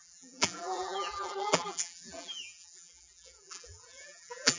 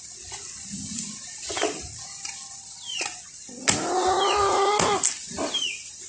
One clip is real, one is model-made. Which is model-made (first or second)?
first